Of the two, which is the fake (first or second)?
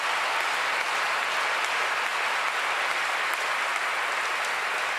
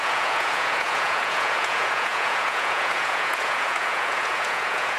second